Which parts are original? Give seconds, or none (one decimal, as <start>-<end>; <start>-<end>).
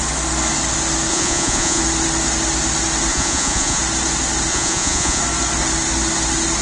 0.0-1.1; 1.8-3.1; 3.8-4.5; 5.2-6.6